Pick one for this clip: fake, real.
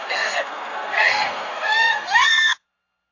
fake